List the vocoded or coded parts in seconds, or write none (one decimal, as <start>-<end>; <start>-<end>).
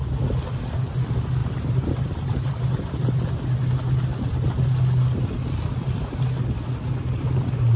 1.4-3.3